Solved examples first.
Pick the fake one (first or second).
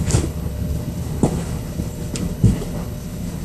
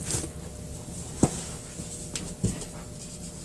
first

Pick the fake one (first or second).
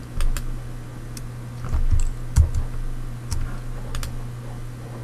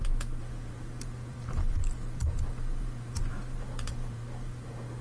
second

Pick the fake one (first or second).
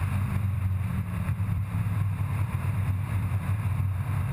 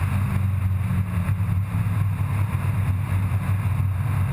first